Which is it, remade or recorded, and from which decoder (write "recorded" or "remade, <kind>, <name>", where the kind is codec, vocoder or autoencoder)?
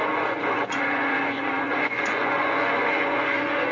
remade, vocoder, Vocos